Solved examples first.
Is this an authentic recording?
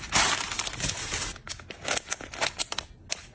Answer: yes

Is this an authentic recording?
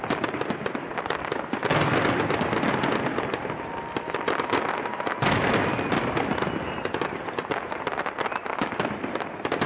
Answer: yes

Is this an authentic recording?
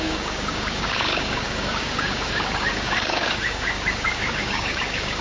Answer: no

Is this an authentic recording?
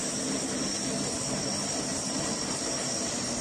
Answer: yes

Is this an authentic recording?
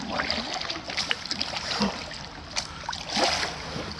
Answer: yes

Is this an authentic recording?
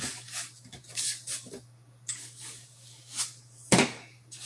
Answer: no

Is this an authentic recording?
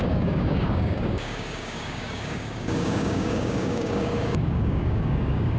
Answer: no